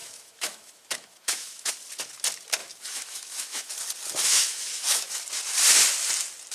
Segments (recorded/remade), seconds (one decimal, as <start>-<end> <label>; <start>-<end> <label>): 0.0-1.7 remade; 1.7-2.6 recorded; 2.6-3.7 remade; 3.7-4.3 recorded; 4.3-5.1 remade; 5.1-6.5 recorded